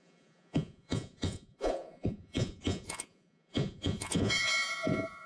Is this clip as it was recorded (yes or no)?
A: no